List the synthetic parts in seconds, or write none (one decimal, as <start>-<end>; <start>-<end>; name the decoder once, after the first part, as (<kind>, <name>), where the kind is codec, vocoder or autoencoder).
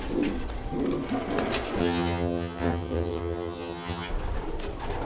1.8-4.1 (vocoder, HiFi-GAN)